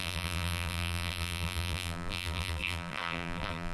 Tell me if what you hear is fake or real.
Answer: fake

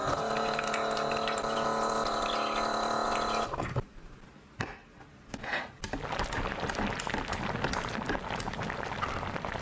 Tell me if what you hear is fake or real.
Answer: real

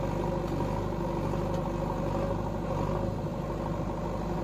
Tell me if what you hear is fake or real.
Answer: real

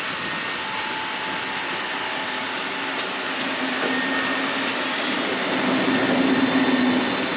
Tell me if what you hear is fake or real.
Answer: real